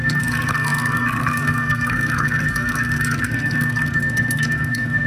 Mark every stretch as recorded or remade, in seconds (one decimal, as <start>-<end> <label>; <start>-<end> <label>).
0.0-5.1 remade